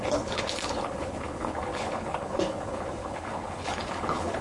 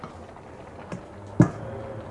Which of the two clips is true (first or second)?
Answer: second